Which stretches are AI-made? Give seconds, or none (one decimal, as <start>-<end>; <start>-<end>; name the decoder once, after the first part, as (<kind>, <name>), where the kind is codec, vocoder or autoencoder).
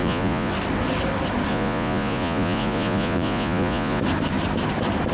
0.0-0.5 (vocoder, Vocos); 1.5-4.0